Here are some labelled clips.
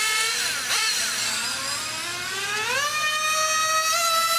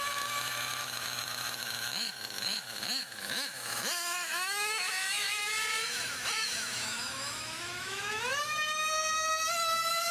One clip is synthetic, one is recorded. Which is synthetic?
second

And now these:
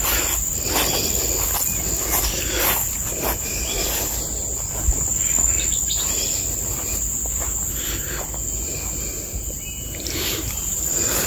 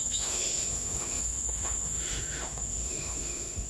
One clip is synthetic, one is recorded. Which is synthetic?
second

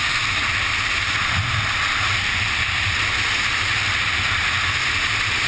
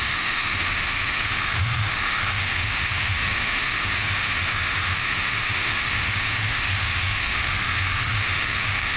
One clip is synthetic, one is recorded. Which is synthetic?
second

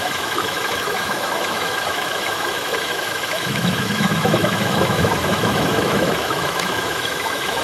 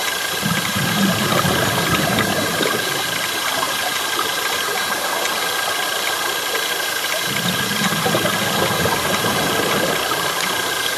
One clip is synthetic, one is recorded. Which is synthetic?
first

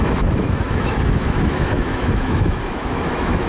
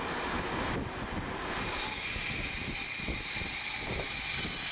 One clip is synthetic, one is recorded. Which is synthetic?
first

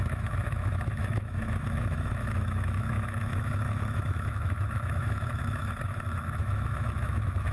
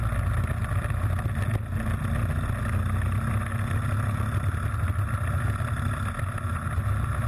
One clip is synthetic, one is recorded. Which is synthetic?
first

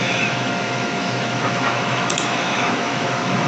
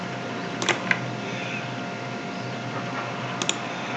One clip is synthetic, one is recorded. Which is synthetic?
first